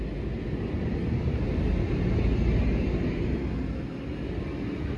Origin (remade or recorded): recorded